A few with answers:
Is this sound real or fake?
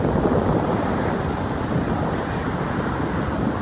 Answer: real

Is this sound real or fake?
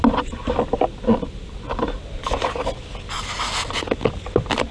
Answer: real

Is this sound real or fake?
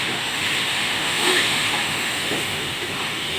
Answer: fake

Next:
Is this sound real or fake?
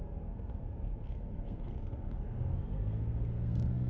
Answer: fake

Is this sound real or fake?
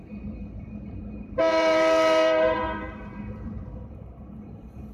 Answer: fake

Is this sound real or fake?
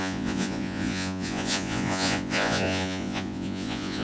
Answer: fake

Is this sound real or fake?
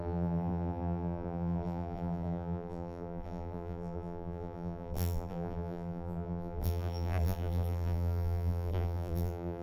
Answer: fake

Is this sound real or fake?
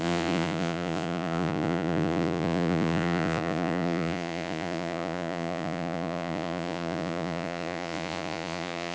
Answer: fake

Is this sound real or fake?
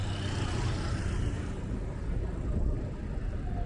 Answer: real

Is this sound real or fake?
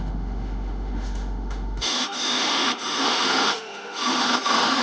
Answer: fake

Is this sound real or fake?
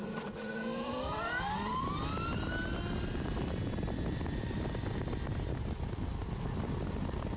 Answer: real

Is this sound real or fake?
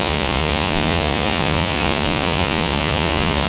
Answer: fake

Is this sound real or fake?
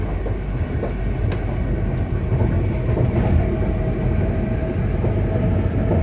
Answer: real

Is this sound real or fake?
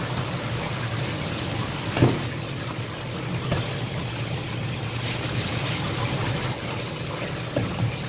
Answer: real